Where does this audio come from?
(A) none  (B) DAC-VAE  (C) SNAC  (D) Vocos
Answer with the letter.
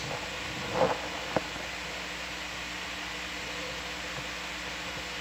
A